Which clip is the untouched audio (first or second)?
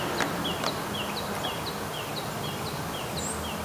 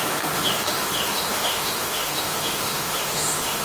first